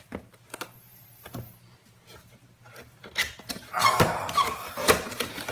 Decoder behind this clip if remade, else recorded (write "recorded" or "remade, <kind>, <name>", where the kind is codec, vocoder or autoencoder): remade, vocoder, BigVGAN v2